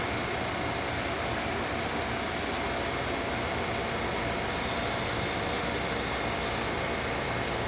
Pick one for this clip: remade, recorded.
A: recorded